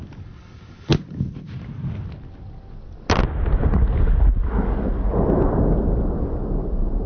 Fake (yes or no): no